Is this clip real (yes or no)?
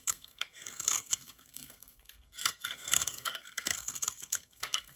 no